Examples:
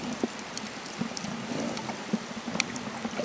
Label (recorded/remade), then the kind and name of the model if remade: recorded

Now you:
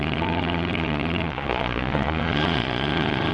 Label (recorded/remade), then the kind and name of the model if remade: remade, vocoder, Vocos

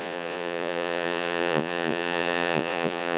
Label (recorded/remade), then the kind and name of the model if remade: remade, vocoder, Vocos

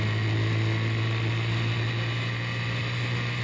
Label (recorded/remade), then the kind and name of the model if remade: recorded